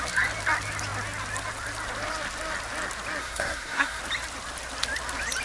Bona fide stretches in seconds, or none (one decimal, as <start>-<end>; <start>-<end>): 0.0-3.2; 4.0-5.4